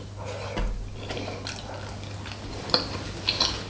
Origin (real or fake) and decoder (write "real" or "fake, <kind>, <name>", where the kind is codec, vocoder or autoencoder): real